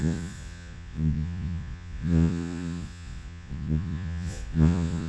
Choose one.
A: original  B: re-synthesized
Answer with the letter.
B